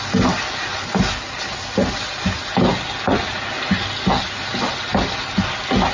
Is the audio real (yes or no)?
yes